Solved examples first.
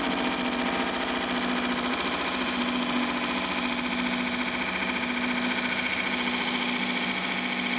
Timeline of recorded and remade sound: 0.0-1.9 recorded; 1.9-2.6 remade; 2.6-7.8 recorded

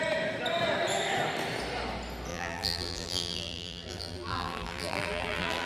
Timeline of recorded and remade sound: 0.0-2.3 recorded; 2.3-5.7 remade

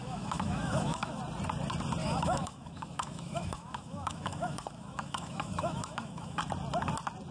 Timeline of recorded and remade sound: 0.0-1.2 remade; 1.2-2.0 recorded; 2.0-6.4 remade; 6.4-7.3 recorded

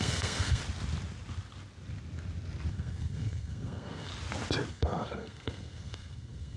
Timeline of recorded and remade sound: 0.0-0.6 remade; 0.6-2.7 recorded; 2.7-4.1 remade; 4.1-4.7 recorded; 4.7-6.6 remade